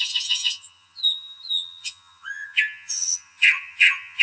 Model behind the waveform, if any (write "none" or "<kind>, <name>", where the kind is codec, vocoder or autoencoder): vocoder, HiFi-GAN